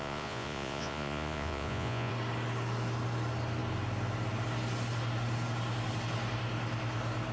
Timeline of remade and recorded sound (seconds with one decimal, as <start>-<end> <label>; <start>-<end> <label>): 0.0-2.1 remade; 2.1-7.3 recorded